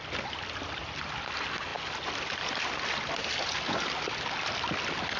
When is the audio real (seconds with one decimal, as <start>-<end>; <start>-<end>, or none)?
0.0-5.2